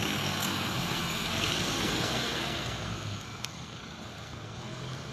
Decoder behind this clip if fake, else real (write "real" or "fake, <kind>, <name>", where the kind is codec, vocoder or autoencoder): fake, codec, SNAC